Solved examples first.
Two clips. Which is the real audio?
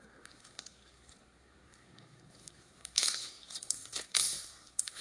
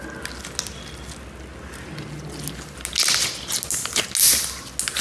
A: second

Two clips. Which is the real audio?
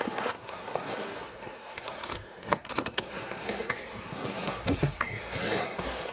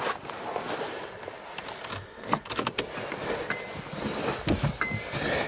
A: second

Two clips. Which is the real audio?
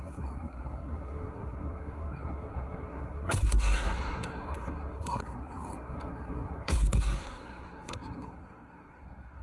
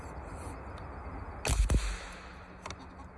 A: second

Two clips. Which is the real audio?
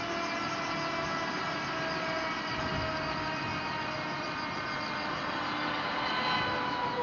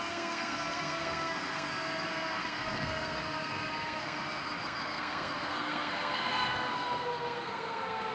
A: first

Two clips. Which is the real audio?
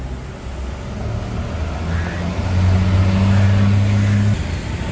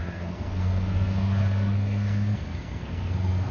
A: first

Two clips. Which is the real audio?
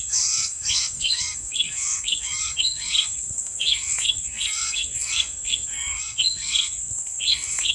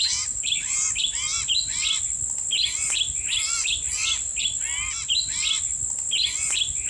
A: second